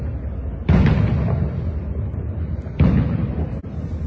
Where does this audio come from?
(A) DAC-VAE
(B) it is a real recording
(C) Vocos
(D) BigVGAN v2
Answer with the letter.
B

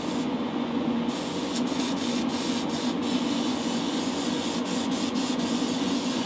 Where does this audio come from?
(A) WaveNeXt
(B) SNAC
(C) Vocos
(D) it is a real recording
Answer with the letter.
C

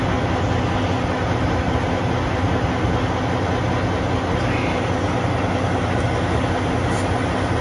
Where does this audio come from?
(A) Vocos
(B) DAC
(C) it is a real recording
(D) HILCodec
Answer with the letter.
C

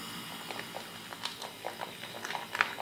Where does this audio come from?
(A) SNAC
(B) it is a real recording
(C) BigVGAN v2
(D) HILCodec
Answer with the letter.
B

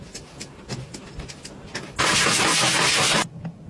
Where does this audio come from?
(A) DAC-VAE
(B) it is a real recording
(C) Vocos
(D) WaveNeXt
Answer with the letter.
B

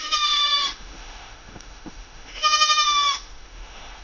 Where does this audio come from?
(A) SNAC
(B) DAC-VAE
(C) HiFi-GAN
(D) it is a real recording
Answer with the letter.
B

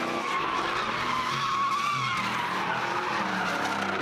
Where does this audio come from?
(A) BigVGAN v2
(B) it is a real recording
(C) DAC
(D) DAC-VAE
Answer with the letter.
B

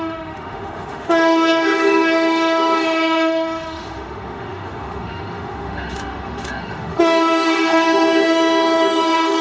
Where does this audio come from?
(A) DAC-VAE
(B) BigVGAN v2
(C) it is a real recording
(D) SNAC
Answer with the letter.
A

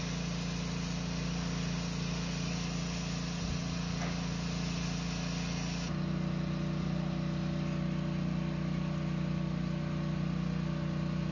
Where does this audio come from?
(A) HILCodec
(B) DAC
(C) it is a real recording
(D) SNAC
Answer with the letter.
C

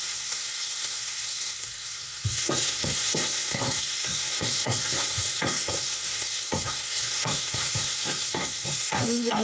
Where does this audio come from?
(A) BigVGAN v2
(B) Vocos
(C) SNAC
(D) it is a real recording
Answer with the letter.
C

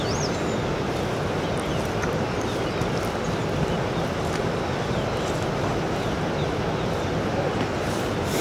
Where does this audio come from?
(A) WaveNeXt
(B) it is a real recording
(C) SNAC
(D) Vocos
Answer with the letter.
B